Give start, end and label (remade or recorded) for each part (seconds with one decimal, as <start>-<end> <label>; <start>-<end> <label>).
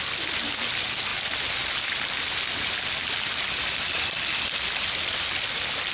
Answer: 0.0-5.9 recorded